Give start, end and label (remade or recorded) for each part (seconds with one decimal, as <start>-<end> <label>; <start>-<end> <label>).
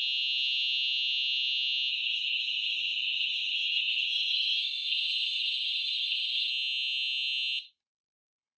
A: 0.0-1.9 recorded; 1.9-6.5 remade; 6.5-8.6 recorded